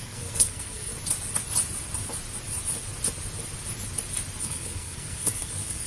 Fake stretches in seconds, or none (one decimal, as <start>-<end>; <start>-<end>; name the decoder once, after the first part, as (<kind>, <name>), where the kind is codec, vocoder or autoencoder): 0.0-0.9 (codec, SNAC); 4.4-5.9